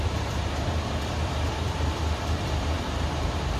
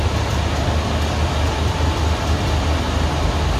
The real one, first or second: second